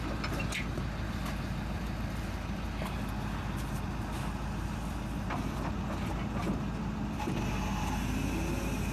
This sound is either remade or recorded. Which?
recorded